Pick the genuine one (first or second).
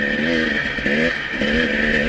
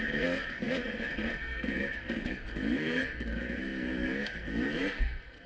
first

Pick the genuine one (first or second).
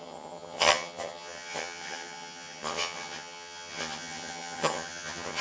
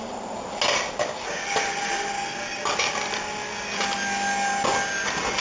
second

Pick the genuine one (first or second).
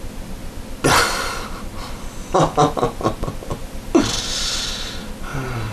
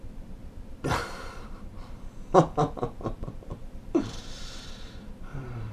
first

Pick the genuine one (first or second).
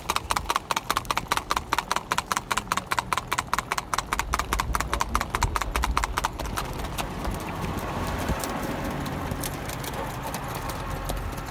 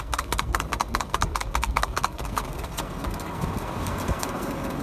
first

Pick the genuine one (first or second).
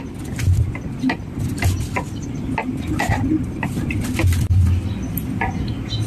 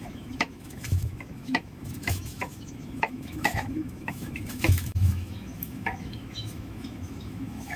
first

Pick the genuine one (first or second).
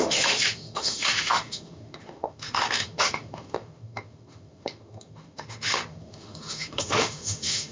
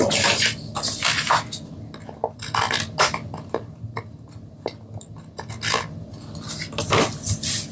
second